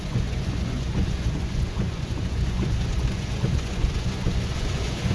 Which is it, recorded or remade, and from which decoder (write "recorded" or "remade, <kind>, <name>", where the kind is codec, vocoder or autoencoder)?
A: remade, vocoder, Vocos